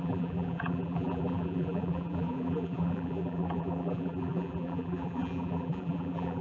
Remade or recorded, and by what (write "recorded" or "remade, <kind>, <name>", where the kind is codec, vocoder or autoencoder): remade, vocoder, BigVGAN v2